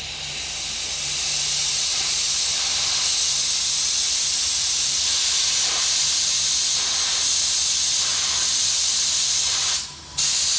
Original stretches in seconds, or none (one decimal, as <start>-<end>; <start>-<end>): 0.0-10.6